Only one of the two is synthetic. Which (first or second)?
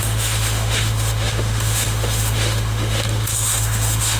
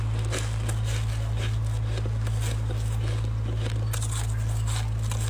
first